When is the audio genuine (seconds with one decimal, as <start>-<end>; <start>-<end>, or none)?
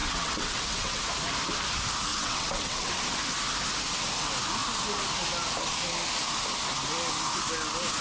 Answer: 1.0-2.1; 2.9-8.0